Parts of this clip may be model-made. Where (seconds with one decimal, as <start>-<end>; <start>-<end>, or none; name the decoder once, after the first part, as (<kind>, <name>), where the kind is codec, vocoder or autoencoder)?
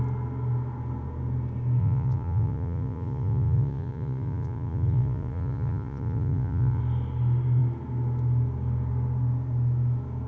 1.8-6.8 (vocoder, Vocos)